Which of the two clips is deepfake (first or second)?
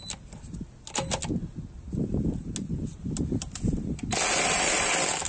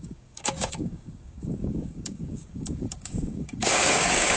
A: second